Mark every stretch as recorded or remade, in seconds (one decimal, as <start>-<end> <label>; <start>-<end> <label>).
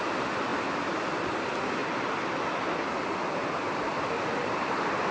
0.0-5.1 recorded